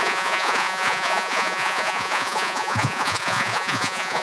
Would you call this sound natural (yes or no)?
no